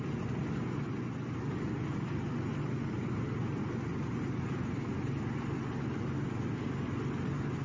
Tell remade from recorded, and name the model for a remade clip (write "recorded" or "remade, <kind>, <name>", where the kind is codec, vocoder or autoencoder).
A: recorded